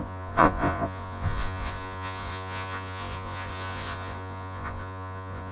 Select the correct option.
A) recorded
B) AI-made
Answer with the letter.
B